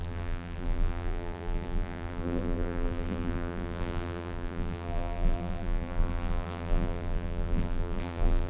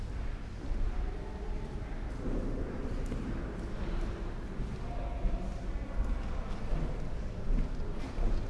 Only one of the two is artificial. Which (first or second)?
first